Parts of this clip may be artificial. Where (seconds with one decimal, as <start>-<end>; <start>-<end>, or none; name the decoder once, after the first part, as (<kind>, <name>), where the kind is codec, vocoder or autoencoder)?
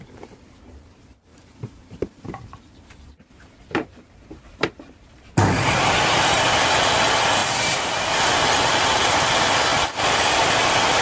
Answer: 1.3-6.5 (vocoder, BigVGAN v2); 7.4-8.0